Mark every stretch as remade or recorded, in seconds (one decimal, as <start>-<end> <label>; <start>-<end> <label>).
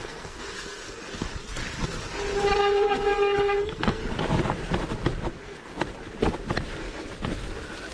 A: 0.0-0.8 remade; 0.8-2.6 recorded; 2.6-4.0 remade; 4.0-5.3 recorded; 5.3-5.9 remade; 5.9-7.9 recorded